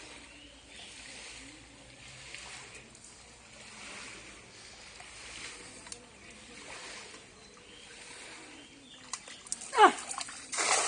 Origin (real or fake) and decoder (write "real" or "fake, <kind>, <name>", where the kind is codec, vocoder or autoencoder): real